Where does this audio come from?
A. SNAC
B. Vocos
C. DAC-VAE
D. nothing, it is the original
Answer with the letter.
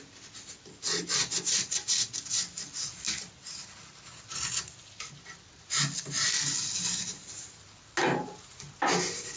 D